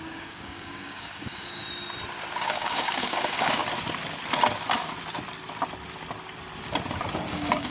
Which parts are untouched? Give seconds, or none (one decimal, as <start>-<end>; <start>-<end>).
1.6-2.4; 3.6-7.3